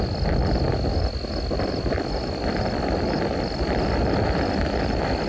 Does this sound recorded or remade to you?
recorded